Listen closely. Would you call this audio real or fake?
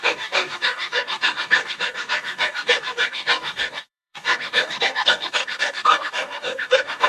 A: fake